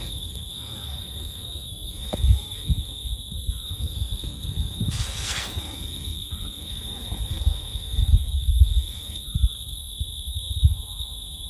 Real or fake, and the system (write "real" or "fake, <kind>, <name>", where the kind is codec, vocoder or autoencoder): fake, codec, SNAC